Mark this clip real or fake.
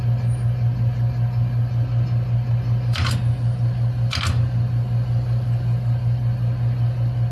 real